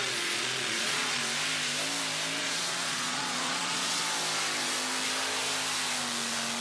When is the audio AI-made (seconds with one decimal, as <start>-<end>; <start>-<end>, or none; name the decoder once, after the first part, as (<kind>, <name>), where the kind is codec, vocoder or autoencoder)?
0.0-1.2 (vocoder, Vocos); 2.4-4.0

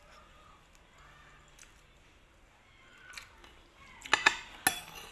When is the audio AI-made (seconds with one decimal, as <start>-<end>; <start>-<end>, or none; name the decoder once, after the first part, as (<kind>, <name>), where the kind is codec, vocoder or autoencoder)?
none

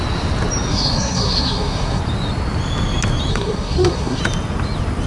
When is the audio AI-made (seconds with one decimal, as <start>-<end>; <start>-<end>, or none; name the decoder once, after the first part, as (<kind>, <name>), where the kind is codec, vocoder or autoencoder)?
0.7-2.0 (codec, SNAC); 3.3-4.2

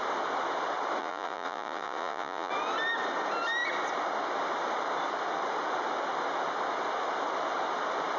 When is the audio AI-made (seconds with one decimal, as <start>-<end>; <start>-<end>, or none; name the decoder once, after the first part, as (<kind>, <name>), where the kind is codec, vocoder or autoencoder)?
1.0-2.5 (vocoder, Vocos)

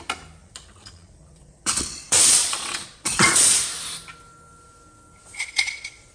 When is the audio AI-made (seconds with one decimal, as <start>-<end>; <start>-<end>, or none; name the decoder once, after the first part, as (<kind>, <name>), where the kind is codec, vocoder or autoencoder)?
0.4-3.7 (vocoder, Vocos); 5.2-6.1